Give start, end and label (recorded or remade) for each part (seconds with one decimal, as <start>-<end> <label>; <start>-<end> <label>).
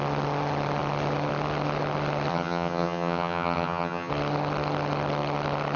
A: 0.0-2.3 recorded; 2.3-4.1 remade; 4.1-5.8 recorded